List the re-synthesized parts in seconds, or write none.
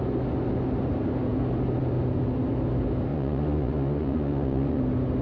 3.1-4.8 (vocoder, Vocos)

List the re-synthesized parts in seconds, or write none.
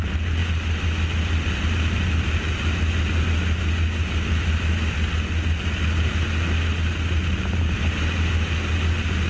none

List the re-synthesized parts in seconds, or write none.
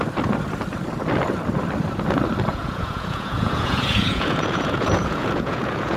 2.5-6.0 (vocoder, Vocos)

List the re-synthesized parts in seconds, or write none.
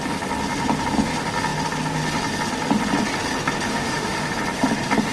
3.7-4.3 (autoencoder, DAC-VAE)